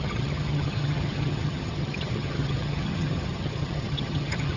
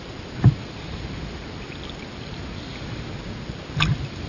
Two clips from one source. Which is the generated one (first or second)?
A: first